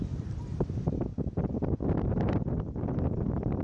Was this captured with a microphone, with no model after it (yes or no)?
no